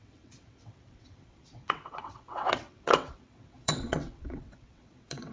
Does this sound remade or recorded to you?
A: remade